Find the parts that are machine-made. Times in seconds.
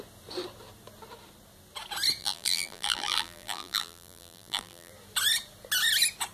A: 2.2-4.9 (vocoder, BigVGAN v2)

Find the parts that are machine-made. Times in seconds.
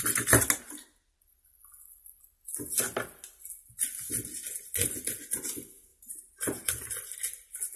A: 5.9-6.7 (vocoder, BigVGAN v2)